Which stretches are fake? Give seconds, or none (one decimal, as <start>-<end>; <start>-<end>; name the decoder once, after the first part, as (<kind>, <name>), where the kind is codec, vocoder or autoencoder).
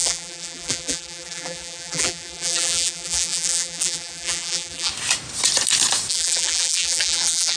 0.0-4.9 (vocoder, BigVGAN v2); 6.1-7.6